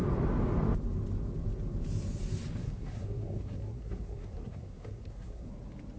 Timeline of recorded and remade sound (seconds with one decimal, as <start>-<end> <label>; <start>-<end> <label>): 0.0-2.6 recorded; 2.6-5.5 remade; 5.5-6.0 recorded